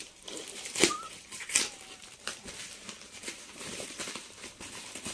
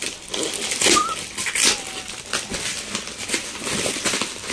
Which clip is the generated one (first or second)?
first